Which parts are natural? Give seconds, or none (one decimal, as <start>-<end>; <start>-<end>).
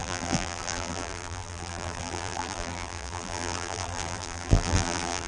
none